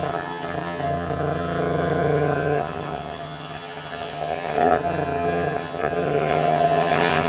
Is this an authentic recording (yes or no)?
no